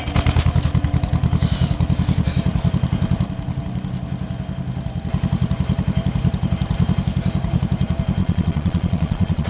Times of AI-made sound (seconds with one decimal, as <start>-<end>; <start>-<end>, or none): 8.2-9.5